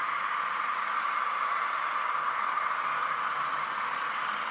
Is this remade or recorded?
recorded